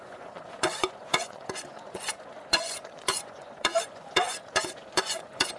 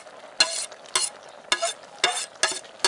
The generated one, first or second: first